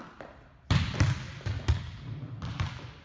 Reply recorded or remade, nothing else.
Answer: remade